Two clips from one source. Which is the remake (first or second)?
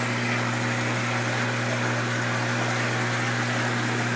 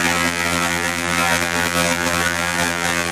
second